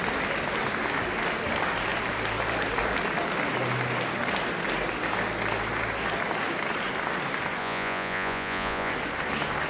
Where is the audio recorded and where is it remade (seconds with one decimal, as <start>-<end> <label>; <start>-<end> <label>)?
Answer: 0.0-7.6 recorded; 7.6-8.9 remade; 8.9-9.7 recorded